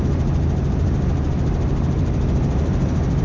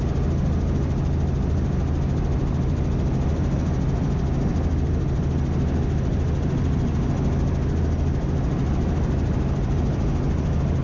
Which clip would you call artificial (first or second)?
first